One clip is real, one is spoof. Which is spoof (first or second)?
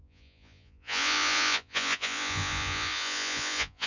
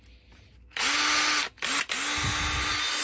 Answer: first